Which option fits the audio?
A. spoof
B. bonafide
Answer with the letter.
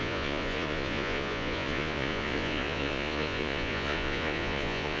A